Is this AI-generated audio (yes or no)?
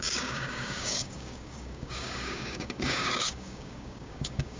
yes